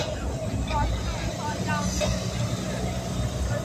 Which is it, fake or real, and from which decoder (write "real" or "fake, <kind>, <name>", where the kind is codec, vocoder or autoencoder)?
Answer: real